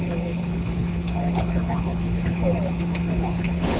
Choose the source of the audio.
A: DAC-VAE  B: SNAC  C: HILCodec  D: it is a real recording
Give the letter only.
C